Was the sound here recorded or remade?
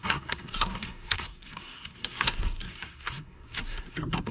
remade